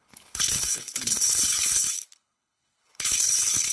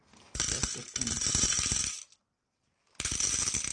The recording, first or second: second